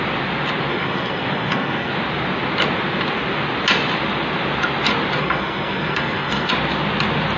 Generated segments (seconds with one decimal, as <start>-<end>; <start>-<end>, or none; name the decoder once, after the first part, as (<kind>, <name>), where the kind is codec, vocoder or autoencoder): 0.7-1.9 (codec, SNAC); 5.2-6.5

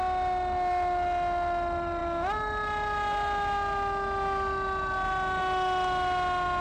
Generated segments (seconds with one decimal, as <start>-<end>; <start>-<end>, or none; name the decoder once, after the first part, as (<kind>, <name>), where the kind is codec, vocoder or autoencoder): none

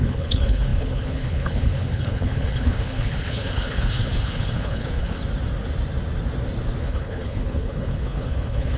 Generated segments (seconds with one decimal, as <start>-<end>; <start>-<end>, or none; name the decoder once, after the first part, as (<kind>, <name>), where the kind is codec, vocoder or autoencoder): 0.0-5.2 (codec, HILCodec); 6.8-8.8

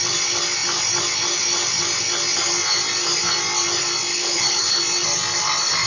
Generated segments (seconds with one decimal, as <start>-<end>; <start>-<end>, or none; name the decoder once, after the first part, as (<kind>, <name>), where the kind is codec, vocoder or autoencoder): 4.1-4.8 (codec, HILCodec)